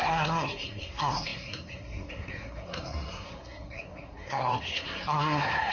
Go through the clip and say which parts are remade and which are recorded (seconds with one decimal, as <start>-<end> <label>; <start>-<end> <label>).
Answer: 0.0-5.7 remade